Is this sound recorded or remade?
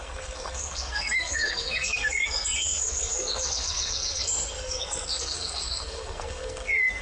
remade